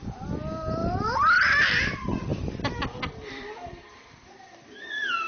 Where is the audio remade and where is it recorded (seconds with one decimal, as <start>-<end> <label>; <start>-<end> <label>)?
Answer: 0.0-0.8 recorded; 0.8-1.6 remade; 1.6-2.3 recorded; 2.3-4.7 remade; 4.7-5.3 recorded